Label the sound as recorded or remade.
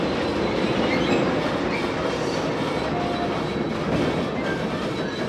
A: recorded